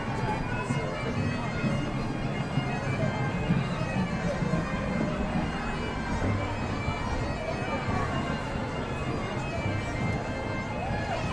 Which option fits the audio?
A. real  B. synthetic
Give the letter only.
A